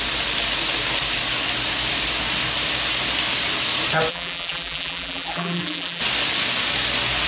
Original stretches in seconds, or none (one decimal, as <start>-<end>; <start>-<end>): 0.0-4.1; 6.0-7.3